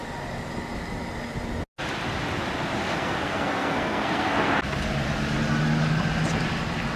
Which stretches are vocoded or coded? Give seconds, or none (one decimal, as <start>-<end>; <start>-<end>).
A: 2.8-4.5